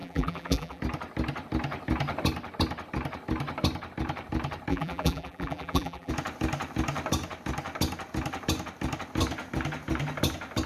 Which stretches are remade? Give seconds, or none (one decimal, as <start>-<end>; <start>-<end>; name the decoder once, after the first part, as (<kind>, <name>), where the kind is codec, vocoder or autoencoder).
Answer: 0.0-0.8 (vocoder, BigVGAN v2); 4.7-6.1